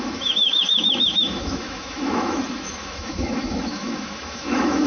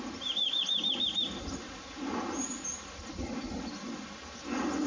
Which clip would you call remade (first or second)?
first